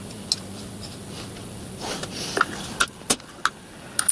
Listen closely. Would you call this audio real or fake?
real